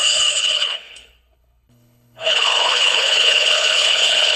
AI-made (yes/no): yes